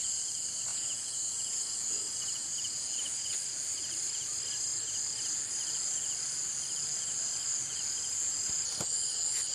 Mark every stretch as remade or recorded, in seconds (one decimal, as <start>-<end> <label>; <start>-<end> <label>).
0.0-0.7 recorded; 0.7-3.3 remade; 3.3-9.5 recorded